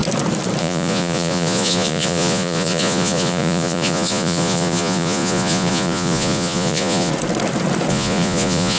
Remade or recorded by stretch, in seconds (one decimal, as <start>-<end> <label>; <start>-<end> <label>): 0.0-0.6 recorded; 0.6-7.1 remade; 7.1-7.9 recorded; 7.9-8.8 remade